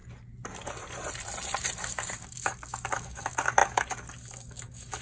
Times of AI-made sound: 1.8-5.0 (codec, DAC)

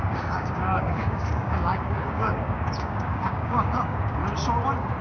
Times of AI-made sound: 0.0-4.2 (codec, DAC)

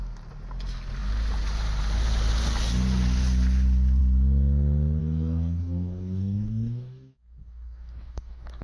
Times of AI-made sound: 5.0-8.6 (codec, DAC)

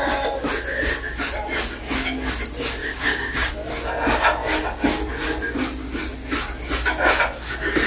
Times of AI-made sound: 2.8-3.5 (codec, DAC)

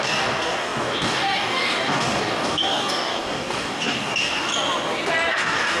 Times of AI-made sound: 0.0-4.5 (codec, DAC); 5.3-5.8

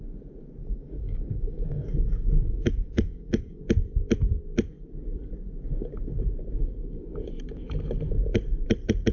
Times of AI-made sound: 0.6-3.6 (codec, DAC)